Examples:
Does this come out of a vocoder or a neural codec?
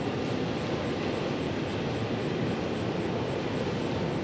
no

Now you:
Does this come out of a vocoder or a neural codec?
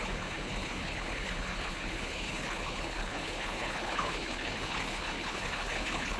yes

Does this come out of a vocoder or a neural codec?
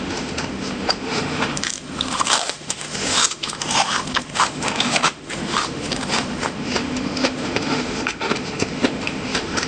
yes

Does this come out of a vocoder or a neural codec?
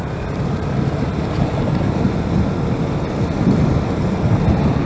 no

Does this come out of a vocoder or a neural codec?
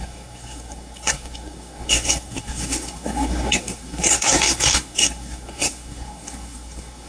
yes